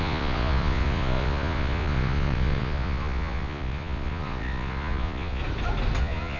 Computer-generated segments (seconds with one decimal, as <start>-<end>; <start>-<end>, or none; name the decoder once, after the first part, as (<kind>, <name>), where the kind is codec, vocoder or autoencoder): 0.0-5.4 (vocoder, Vocos); 6.0-6.4